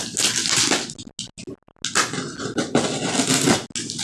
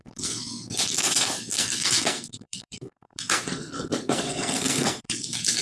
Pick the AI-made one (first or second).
second